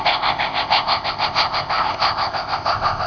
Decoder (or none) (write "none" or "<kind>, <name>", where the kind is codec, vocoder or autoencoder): codec, ZipCodec